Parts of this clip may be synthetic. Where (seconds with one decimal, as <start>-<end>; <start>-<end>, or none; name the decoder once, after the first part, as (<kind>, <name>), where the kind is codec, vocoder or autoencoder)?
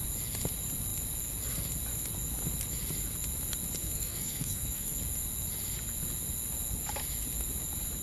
3.8-5.0 (codec, SNAC)